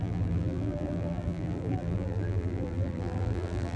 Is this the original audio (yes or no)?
no